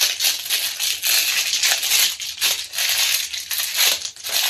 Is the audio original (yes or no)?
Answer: yes